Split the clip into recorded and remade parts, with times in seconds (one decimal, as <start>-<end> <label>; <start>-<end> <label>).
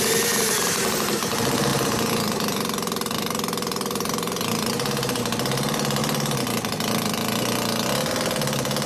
0.0-1.7 recorded; 1.7-5.2 remade; 5.2-8.9 recorded